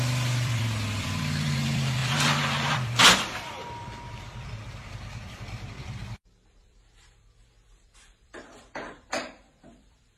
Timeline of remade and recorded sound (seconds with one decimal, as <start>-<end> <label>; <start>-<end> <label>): 0.0-6.0 remade; 6.0-6.6 recorded; 6.6-10.2 remade